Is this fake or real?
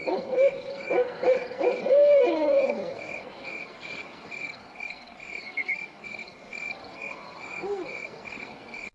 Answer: fake